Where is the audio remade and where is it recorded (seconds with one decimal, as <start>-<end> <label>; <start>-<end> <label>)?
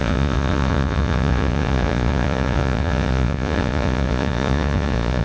0.0-5.2 remade